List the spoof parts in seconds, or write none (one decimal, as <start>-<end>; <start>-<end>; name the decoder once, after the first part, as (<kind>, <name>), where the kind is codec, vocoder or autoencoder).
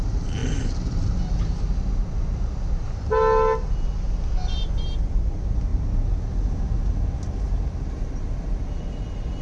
none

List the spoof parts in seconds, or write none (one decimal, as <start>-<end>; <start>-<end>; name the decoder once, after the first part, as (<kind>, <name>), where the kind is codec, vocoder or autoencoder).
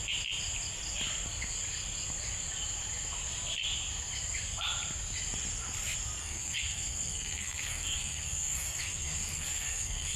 6.2-10.2 (codec, SNAC)